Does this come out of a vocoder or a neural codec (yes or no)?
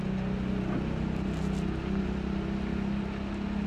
no